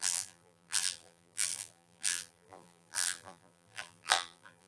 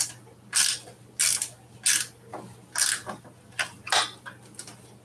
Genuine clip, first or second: second